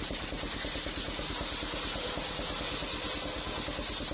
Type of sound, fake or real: real